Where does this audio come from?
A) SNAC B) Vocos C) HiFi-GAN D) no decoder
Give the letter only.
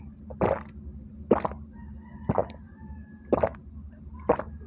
D